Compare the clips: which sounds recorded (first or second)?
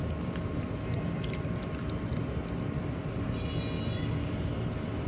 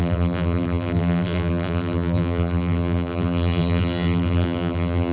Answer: first